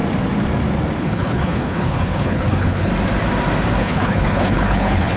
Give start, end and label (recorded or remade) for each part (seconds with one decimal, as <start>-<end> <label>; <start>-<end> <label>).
0.0-1.0 recorded; 1.0-2.9 remade; 2.9-3.8 recorded; 3.8-5.2 remade